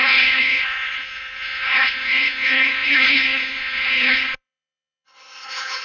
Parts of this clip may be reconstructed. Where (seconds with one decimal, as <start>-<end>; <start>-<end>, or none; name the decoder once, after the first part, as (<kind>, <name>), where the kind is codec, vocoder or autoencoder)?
0.0-5.8 (codec, HILCodec)